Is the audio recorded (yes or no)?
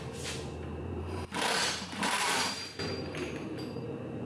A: no